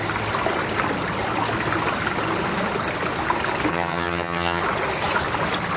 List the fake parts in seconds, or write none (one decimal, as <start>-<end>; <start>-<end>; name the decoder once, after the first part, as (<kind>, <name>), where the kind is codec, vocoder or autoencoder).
3.7-4.6 (vocoder, HiFi-GAN)

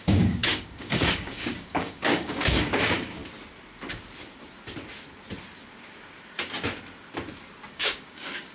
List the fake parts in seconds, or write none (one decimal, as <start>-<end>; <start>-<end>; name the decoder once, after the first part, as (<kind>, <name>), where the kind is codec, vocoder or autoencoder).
0.0-3.2 (codec, DAC); 7.7-8.5

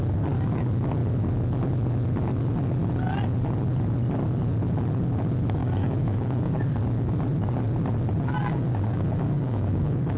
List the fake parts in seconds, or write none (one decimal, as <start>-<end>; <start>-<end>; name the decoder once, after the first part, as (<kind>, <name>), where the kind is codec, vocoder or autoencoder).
5.6-6.5 (codec, DAC); 8.9-10.2

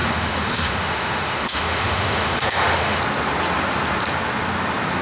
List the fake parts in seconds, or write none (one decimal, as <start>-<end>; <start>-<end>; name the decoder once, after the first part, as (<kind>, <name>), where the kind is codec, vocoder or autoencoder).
0.0-3.0 (autoencoder, DAC-VAE)

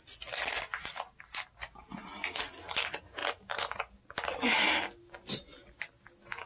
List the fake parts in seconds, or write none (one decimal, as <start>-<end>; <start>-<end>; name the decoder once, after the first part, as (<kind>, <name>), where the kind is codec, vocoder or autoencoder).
3.2-3.8 (vocoder, BigVGAN v2)

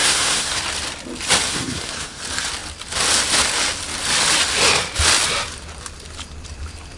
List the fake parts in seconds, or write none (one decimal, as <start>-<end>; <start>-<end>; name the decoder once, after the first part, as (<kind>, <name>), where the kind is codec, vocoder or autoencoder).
0.0-0.6 (codec, SNAC); 1.5-2.2

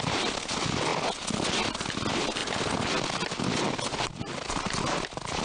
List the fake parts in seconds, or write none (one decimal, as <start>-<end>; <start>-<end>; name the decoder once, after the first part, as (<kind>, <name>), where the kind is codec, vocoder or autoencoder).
none